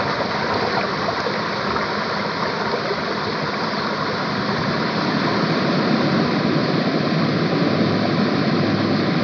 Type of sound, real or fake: real